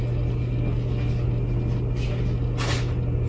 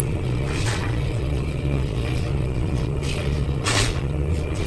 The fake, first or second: second